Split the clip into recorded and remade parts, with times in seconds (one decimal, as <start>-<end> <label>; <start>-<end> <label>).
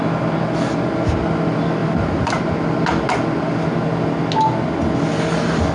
0.0-1.8 recorded; 1.8-2.4 remade; 2.4-5.7 recorded